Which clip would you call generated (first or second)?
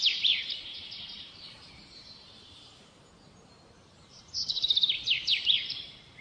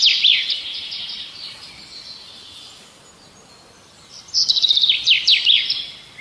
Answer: first